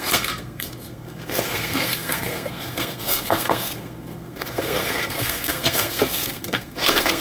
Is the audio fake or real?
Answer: fake